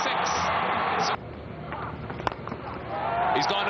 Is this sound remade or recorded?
recorded